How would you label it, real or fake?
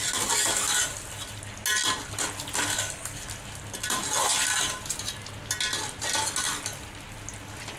real